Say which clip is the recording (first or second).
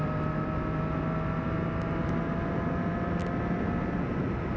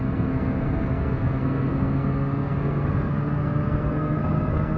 first